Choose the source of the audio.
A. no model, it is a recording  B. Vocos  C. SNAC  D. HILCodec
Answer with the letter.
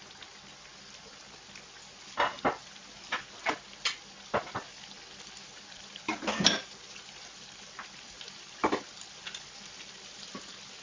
A